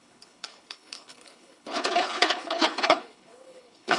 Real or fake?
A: fake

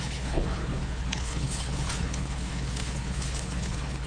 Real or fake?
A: fake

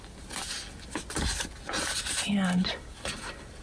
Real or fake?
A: real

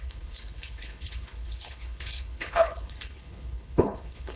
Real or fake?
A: fake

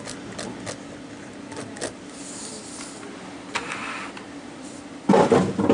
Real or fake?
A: real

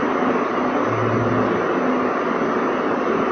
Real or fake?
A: real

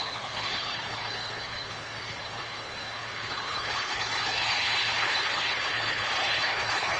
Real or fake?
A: fake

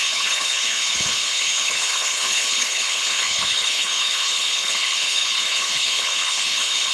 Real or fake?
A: fake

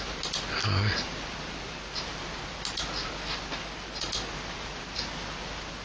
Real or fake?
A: real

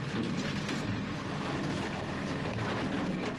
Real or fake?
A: real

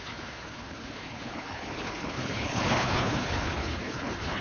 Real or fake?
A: fake